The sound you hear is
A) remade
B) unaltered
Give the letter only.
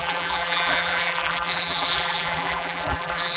A